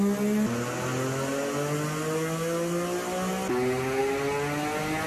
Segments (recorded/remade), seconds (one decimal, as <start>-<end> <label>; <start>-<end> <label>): 0.0-5.1 recorded